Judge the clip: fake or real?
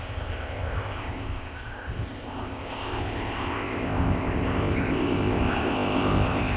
fake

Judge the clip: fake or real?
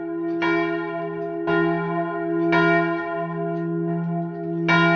real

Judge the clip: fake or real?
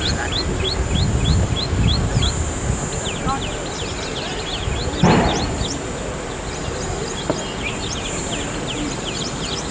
real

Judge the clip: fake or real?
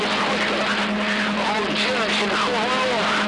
real